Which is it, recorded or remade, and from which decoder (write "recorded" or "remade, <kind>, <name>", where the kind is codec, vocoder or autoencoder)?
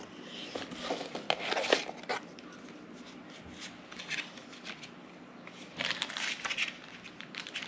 recorded